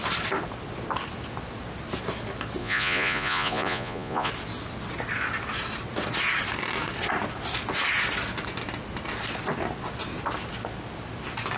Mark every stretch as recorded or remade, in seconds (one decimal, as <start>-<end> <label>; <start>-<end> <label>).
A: 0.0-2.6 recorded; 2.6-4.3 remade; 4.3-11.6 recorded